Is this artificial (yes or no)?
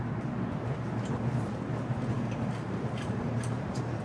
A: no